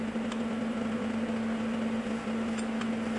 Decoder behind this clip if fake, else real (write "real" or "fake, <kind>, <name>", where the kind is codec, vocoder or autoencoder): real